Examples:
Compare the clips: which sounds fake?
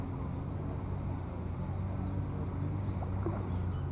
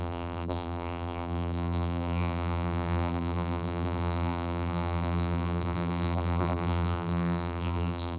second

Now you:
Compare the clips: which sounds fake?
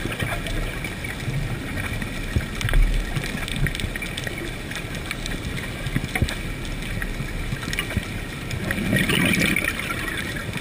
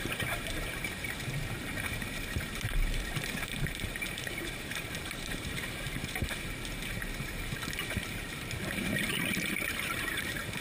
second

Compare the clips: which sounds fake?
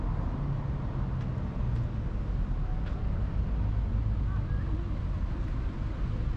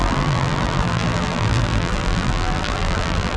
second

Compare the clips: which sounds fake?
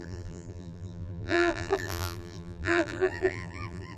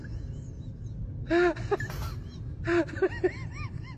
first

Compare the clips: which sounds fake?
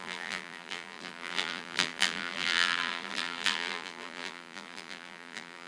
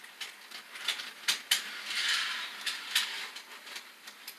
first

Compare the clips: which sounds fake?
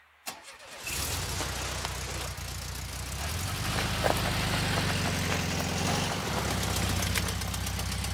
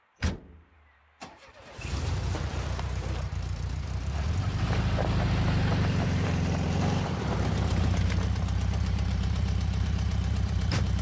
second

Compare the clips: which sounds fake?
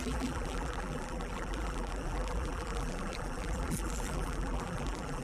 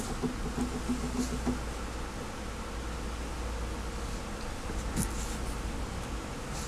first